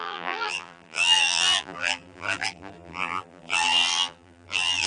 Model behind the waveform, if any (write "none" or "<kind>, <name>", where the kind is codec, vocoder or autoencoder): vocoder, BigVGAN v2